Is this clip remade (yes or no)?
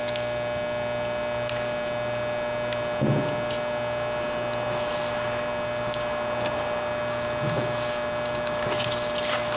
no